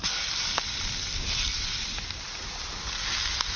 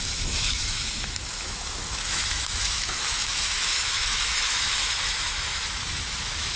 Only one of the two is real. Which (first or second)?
first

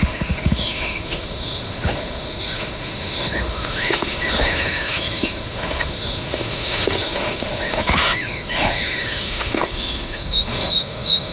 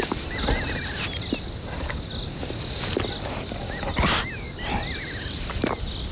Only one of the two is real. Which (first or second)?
second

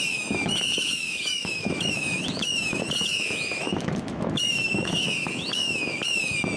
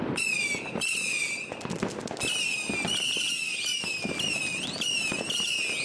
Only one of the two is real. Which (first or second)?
second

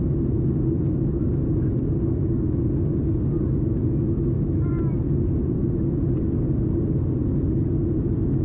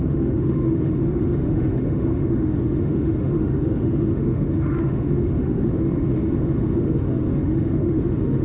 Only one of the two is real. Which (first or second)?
first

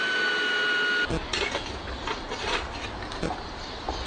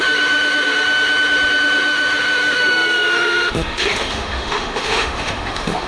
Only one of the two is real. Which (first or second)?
first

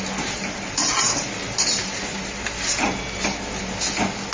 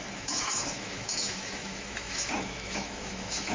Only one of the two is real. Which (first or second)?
first